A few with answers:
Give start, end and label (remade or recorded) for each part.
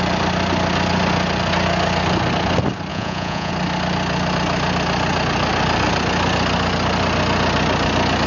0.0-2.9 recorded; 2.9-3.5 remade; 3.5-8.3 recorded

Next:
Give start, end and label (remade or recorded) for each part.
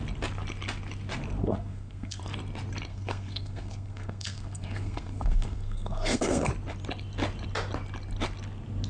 0.0-1.4 recorded; 1.4-2.2 remade; 2.2-2.9 recorded; 2.9-6.5 remade; 6.5-8.9 recorded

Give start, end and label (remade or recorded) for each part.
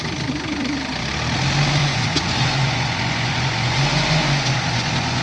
0.0-1.8 recorded; 1.8-5.2 remade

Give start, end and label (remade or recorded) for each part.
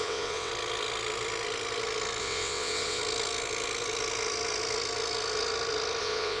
0.0-0.5 remade; 0.5-2.2 recorded; 2.2-3.0 remade; 3.0-6.0 recorded; 6.0-6.4 remade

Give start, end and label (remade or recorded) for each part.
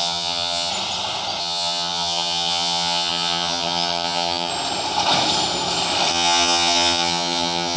0.0-0.7 remade; 0.7-1.4 recorded; 1.4-4.5 remade; 4.5-6.1 recorded; 6.1-7.8 remade